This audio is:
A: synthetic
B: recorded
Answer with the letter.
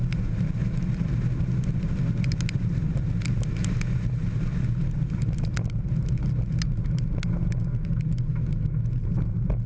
B